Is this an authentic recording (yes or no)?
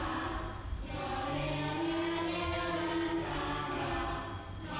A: yes